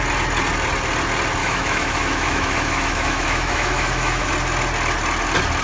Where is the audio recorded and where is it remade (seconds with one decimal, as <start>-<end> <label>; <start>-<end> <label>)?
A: 0.0-1.4 recorded; 1.4-4.3 remade; 4.3-5.6 recorded